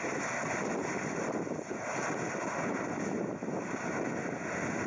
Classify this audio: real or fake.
real